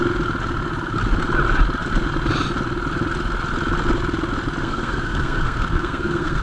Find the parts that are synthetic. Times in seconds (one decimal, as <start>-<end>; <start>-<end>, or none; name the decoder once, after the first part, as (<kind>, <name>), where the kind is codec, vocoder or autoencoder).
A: 4.6-6.4 (codec, SNAC)